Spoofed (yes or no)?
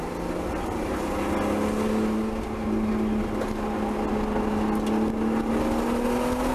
no